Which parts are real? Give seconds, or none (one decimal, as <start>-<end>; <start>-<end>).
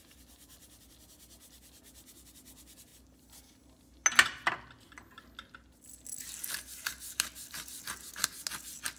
0.0-9.0